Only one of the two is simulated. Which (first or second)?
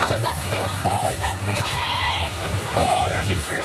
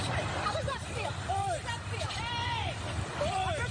first